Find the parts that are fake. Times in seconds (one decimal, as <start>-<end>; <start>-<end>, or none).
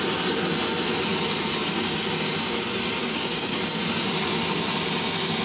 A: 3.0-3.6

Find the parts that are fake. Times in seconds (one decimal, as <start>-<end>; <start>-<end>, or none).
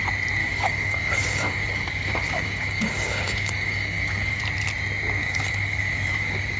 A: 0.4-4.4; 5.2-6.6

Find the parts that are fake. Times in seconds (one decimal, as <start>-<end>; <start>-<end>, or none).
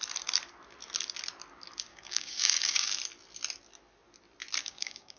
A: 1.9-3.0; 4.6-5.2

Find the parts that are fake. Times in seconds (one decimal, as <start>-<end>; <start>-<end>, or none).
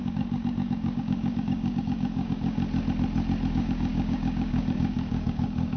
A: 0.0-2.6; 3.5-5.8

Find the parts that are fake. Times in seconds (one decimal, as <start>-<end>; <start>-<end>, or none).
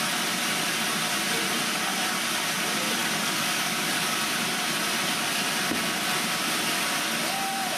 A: 3.0-4.2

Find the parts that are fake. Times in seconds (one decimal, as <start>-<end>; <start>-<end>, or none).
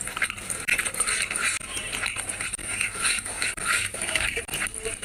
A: 2.6-4.4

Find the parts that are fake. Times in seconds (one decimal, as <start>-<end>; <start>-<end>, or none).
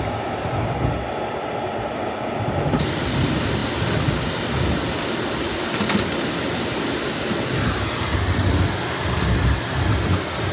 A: none